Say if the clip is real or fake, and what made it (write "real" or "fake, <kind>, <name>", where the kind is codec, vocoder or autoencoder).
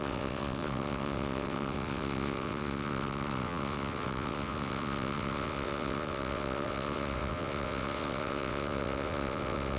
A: fake, vocoder, WaveNeXt